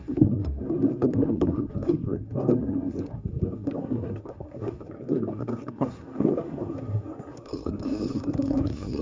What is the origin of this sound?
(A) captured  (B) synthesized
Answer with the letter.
B